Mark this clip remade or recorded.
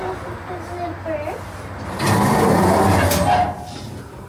recorded